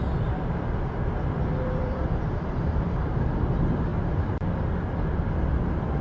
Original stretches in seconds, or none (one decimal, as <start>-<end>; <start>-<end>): 0.0-1.7; 3.9-6.0